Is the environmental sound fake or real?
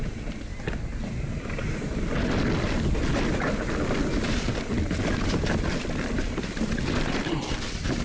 real